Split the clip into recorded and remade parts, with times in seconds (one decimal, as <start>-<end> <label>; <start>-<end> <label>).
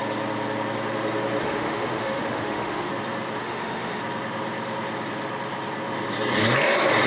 0.0-1.4 recorded; 1.4-2.9 remade; 2.9-3.4 recorded; 3.4-4.0 remade; 4.0-7.1 recorded